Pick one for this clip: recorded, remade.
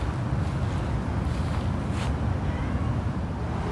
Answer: recorded